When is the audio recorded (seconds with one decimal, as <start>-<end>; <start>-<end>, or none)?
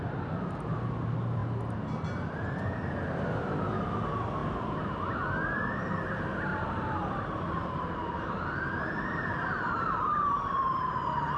0.0-1.4; 2.6-6.5